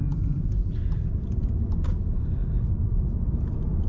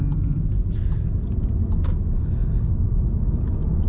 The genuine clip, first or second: second